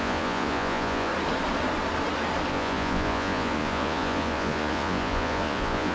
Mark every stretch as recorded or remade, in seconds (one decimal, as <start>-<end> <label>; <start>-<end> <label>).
0.0-1.1 remade; 1.1-2.5 recorded; 2.5-5.9 remade